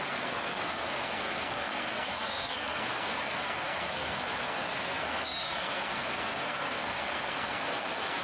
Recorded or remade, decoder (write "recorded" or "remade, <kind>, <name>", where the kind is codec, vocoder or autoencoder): remade, codec, SNAC